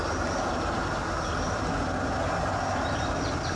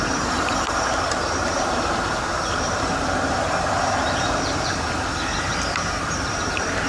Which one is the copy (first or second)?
second